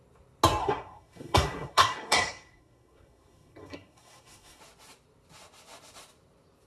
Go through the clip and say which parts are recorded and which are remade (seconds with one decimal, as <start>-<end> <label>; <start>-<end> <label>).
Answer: 0.0-0.6 recorded; 0.6-4.6 remade; 4.6-6.7 recorded